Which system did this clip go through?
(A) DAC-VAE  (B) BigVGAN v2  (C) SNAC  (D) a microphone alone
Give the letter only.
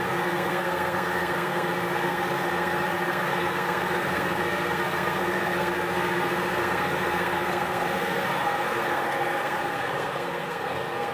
C